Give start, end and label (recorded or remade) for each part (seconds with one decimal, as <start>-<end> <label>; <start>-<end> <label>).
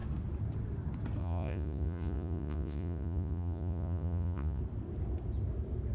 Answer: 0.0-1.2 recorded; 1.2-4.6 remade; 4.6-5.9 recorded